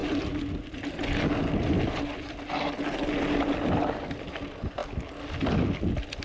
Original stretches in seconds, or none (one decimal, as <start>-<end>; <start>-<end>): 0.0-6.2